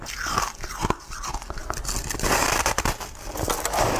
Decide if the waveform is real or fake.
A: real